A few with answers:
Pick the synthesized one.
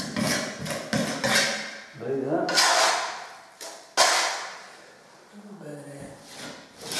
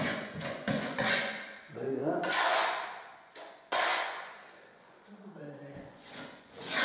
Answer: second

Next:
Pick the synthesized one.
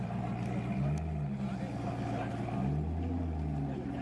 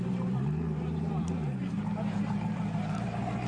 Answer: second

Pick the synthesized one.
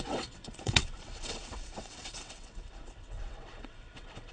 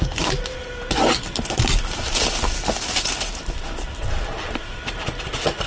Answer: first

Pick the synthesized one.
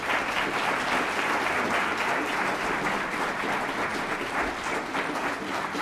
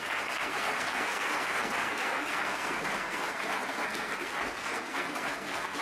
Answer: second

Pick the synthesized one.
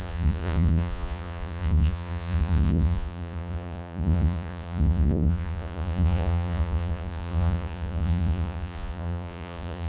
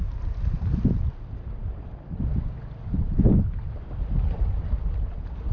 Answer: first